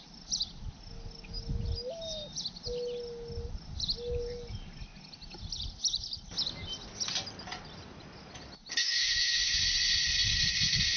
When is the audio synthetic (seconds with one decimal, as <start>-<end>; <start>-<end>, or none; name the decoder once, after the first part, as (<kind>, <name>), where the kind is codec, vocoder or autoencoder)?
8.8-9.6 (autoencoder, DAC-VAE)